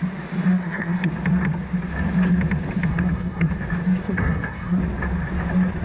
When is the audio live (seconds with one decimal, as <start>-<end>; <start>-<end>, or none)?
0.0-0.5; 1.1-2.9; 3.5-4.0; 4.8-5.8